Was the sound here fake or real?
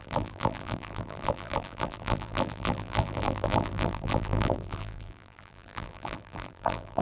fake